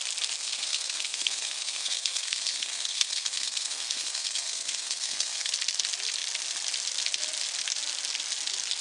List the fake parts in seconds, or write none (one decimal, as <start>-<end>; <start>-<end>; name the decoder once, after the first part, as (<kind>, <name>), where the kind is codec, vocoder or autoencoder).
0.4-5.5 (codec, SNAC)